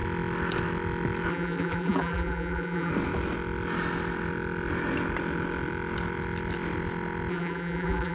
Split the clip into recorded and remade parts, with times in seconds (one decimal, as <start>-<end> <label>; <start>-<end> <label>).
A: 0.0-1.3 recorded; 1.3-2.9 remade; 2.9-7.3 recorded; 7.3-8.1 remade